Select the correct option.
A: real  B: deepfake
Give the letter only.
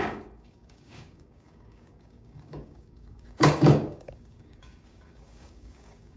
B